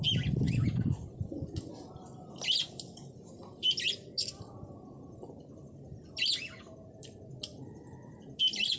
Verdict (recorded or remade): recorded